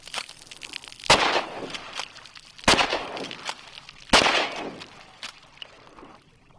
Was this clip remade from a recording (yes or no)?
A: no